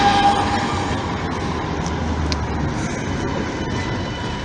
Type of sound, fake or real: real